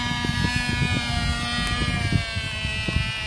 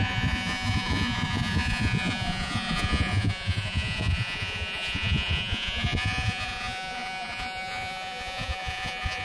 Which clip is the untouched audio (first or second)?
first